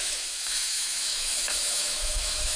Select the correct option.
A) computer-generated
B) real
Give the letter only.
A